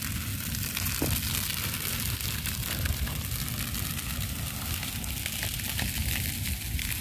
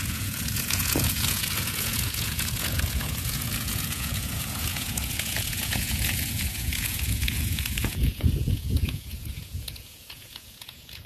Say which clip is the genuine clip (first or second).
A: first